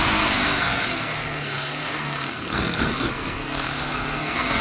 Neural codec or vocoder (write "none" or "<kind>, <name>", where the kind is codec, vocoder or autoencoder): codec, SNAC